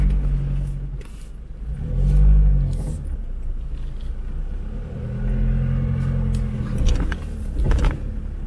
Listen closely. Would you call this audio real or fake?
real